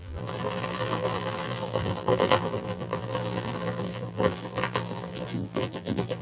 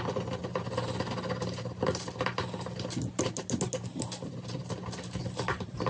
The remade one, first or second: first